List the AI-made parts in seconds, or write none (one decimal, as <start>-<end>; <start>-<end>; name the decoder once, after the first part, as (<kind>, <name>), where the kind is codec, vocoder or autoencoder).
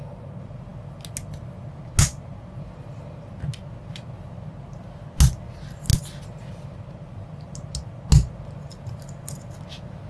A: none